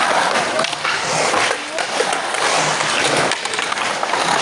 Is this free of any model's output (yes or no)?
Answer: yes